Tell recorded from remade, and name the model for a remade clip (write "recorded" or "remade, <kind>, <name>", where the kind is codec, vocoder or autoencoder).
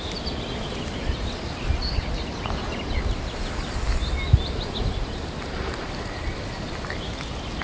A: recorded